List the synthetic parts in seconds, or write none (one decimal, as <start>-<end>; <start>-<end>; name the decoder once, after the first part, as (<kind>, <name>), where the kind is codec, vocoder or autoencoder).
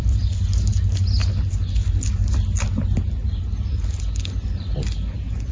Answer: none